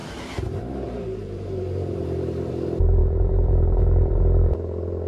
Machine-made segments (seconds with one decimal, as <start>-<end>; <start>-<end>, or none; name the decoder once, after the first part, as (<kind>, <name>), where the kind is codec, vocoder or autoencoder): 0.0-5.1 (vocoder, BigVGAN v2)